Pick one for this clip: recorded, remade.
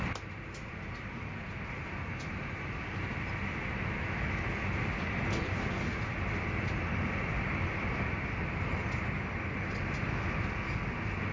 recorded